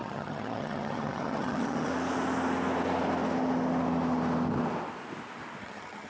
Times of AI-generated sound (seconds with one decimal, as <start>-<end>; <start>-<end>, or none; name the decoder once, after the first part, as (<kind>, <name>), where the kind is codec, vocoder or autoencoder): 0.0-1.9 (vocoder, HiFi-GAN); 5.6-6.1